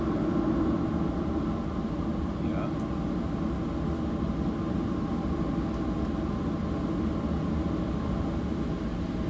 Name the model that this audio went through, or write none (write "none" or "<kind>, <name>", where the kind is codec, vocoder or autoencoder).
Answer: none